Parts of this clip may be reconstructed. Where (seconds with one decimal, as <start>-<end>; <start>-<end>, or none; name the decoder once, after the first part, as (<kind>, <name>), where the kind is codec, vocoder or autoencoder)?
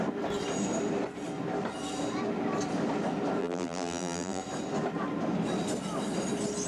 3.4-4.4 (vocoder, BigVGAN v2)